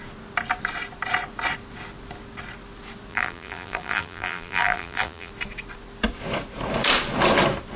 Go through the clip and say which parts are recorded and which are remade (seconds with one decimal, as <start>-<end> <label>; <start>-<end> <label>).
0.0-3.1 recorded; 3.1-5.3 remade; 5.3-7.8 recorded